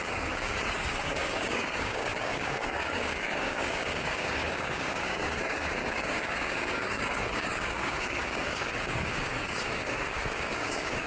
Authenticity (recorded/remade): remade